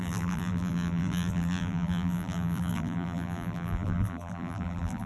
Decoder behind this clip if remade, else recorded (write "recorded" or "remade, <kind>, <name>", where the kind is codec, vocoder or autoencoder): remade, vocoder, BigVGAN v2